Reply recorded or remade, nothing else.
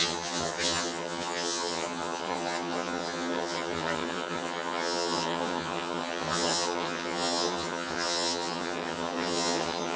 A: remade